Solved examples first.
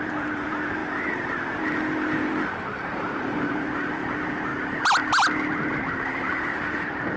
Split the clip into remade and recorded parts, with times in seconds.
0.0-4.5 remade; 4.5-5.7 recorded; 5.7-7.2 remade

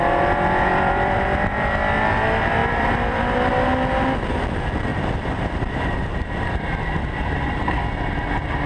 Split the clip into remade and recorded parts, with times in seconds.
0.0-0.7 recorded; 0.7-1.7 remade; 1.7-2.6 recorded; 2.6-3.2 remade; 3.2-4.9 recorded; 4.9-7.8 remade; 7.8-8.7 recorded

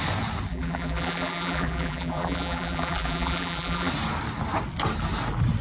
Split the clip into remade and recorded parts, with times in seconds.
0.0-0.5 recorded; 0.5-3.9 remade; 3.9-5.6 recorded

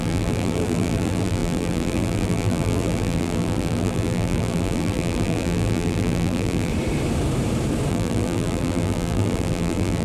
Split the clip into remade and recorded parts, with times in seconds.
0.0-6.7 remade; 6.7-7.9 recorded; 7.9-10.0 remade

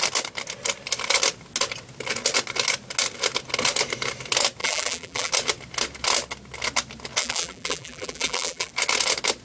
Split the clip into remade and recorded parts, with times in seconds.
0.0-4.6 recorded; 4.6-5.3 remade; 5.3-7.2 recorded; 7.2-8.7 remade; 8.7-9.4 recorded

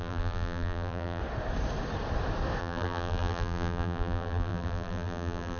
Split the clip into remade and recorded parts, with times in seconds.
0.0-1.2 remade; 1.2-2.6 recorded; 2.6-5.6 remade

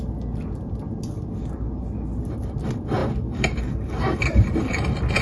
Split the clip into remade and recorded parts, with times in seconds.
0.0-3.0 recorded; 3.0-4.7 remade; 4.7-5.2 recorded